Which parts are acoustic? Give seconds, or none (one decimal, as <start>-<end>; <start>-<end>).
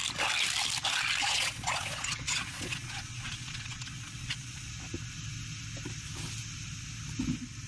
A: 0.0-1.2; 4.7-7.7